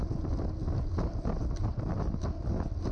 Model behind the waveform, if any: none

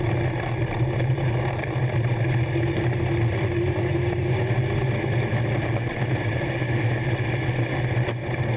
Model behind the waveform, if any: none